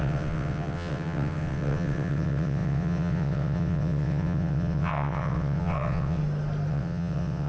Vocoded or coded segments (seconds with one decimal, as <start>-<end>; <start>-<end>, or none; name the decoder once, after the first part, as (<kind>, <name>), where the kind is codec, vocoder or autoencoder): 0.0-6.2 (vocoder, WaveNeXt); 6.7-7.5